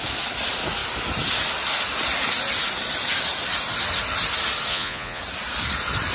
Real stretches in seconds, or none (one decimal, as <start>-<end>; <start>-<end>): 0.0-4.7; 5.2-6.1